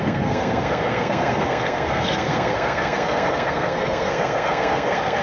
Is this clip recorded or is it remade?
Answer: remade